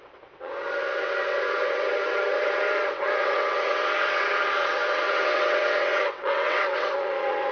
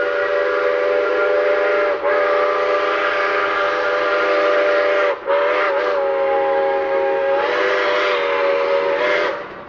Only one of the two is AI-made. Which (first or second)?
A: first